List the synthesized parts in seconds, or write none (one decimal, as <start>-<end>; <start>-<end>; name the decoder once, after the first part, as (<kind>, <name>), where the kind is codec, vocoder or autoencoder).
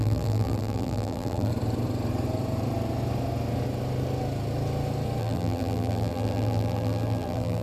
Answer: 0.0-1.5 (vocoder, BigVGAN v2); 5.2-7.6